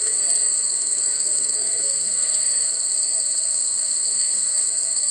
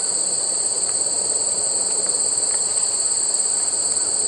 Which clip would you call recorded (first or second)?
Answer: second